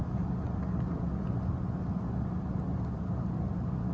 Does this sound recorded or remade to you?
recorded